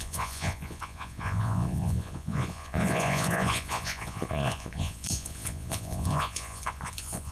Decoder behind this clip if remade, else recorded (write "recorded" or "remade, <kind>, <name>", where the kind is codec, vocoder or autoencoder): remade, vocoder, Vocos